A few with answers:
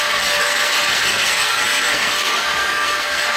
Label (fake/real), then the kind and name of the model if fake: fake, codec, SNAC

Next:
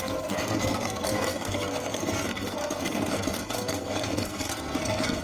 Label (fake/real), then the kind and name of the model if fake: fake, codec, SNAC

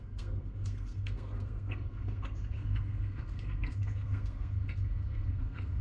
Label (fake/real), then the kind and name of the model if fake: fake, codec, SNAC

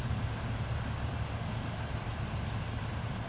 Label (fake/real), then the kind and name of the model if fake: real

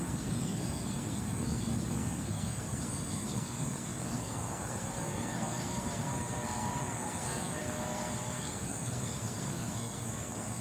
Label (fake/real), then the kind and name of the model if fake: fake, codec, SNAC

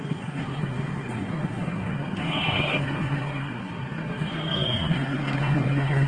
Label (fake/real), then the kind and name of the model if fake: fake, codec, SNAC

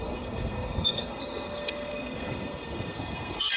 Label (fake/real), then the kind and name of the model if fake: fake, codec, SNAC